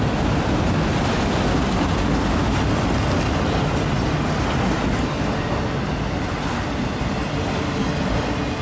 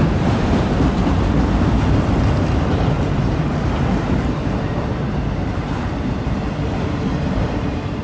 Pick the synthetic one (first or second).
second